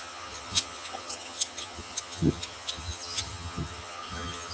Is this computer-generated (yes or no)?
yes